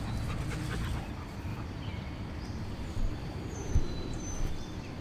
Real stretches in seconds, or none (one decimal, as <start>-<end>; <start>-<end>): 0.0-1.5; 4.5-5.0

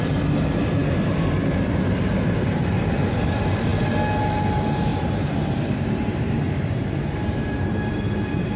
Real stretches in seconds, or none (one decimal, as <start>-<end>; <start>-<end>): 0.0-4.9; 7.0-8.6

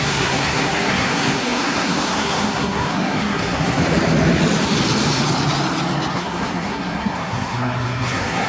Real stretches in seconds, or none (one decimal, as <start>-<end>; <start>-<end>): 3.8-6.1

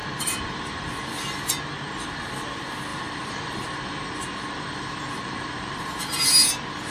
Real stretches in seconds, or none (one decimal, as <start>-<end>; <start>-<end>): 1.2-2.9; 6.2-6.9

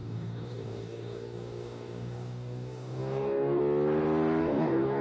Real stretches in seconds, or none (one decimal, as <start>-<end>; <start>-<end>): 3.6-4.4